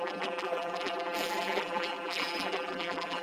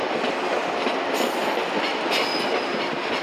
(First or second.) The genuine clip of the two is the second